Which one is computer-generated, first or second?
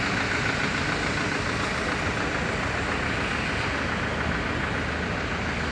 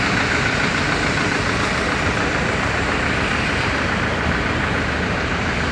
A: second